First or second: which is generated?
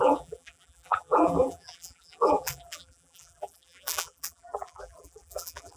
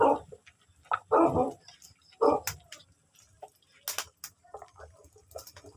first